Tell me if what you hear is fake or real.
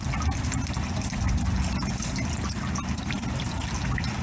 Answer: real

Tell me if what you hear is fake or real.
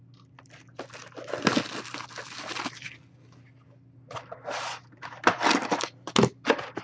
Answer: real